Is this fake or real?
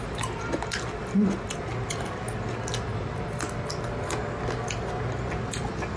real